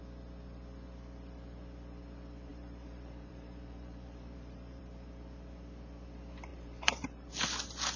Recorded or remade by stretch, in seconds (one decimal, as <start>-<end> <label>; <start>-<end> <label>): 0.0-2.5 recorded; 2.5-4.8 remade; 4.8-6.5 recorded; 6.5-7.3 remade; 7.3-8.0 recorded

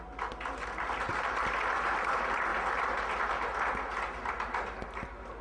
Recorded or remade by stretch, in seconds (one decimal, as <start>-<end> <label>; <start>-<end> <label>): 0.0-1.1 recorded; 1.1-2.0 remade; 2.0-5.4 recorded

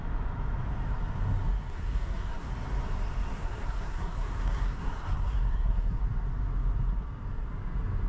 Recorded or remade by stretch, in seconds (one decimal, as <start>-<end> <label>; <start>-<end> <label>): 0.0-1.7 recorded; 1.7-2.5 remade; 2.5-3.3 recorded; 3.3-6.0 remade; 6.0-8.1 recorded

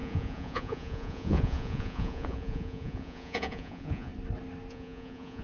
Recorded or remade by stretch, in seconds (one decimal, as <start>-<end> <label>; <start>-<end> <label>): 0.0-4.1 remade; 4.1-4.7 recorded; 4.7-5.4 remade

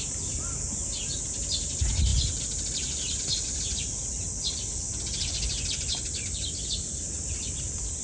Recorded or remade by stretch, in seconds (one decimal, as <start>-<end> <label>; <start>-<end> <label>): 0.0-8.0 recorded

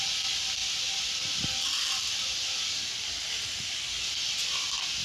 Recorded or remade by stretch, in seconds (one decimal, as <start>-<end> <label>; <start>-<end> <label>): 0.0-0.6 recorded; 0.6-2.3 remade; 2.3-5.0 recorded

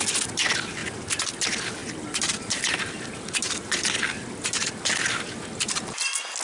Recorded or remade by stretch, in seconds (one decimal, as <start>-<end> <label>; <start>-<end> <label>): 0.0-6.4 recorded